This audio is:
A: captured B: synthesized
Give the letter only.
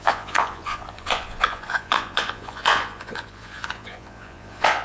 B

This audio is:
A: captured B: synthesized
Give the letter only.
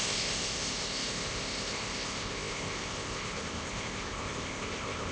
B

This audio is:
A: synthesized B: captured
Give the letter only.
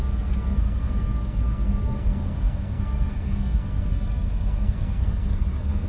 A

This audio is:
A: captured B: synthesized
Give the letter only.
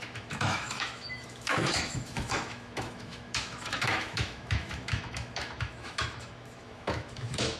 B